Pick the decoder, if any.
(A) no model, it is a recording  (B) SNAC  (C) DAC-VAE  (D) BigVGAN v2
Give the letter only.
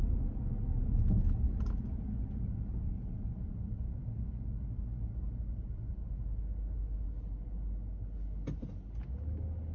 A